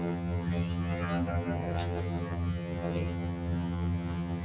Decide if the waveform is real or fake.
fake